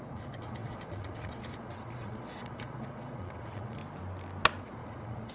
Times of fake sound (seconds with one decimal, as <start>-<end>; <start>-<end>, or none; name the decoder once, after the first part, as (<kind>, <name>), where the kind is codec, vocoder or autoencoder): 0.0-3.8 (vocoder, Vocos); 4.6-5.3